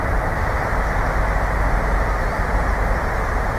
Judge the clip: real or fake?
real